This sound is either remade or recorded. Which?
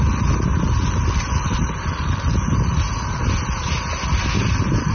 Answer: recorded